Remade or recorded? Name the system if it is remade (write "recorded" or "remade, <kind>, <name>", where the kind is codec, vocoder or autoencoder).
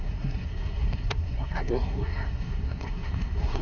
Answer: remade, codec, SNAC